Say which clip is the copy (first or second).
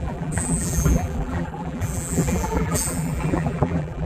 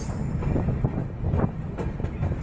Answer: first